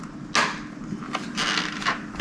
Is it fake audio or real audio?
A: real